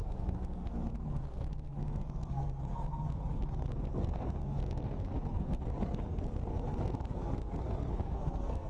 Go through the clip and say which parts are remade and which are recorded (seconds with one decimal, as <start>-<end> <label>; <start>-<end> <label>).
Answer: 0.0-8.7 remade